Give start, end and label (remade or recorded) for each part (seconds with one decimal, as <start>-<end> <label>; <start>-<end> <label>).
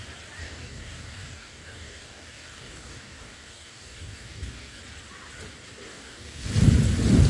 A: 0.0-0.4 recorded; 0.4-4.8 remade; 4.8-5.9 recorded; 5.9-6.5 remade; 6.5-7.3 recorded